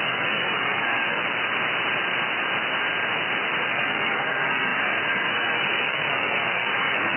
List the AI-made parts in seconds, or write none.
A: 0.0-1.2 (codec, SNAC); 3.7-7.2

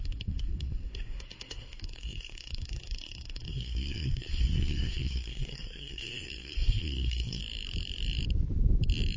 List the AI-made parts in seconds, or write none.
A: 0.0-7.4 (codec, SNAC)

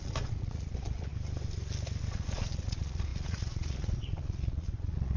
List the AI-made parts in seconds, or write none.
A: 0.0-1.1 (vocoder, Vocos); 2.1-5.2

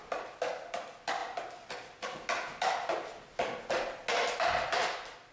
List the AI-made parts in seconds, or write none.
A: none

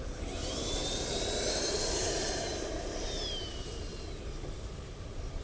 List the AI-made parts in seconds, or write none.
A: 0.0-0.8 (vocoder, BigVGAN v2); 1.5-3.9